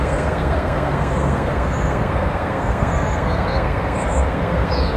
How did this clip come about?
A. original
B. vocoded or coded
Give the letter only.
B